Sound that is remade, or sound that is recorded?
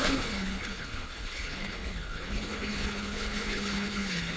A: remade